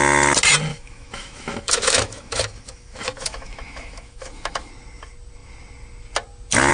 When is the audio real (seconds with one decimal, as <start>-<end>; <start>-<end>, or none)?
0.0-0.7; 4.7-6.7